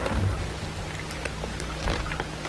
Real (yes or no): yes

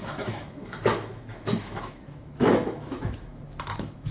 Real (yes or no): no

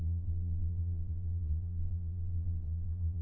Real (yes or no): no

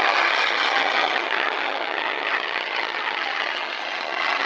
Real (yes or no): no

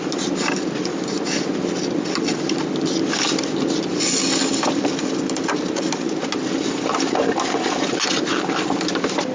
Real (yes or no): yes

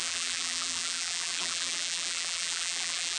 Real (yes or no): no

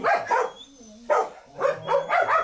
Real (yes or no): yes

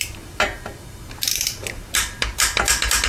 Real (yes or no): no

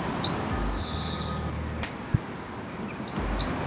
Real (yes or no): yes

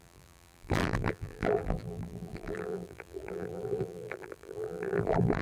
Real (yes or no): no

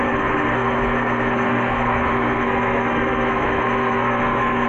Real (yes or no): no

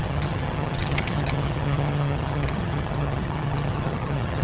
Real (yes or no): no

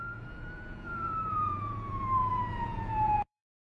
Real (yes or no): no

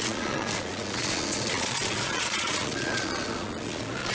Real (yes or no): no